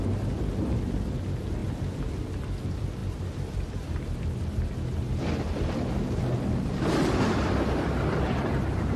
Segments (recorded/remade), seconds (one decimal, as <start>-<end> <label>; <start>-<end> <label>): 0.0-9.0 recorded